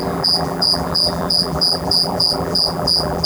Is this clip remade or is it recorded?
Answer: remade